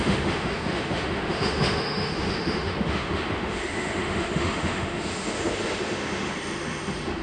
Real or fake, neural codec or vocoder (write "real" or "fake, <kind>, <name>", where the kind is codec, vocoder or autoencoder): fake, autoencoder, DAC-VAE